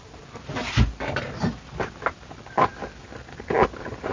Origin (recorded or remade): recorded